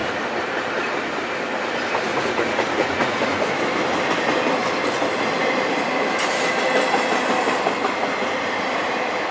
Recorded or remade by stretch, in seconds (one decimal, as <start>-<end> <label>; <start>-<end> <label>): 0.0-2.1 recorded; 2.1-3.4 remade; 3.4-9.3 recorded